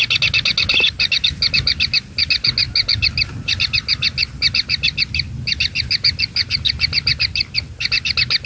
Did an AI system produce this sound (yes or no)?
no